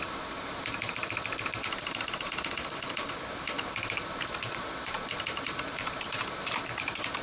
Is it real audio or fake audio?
fake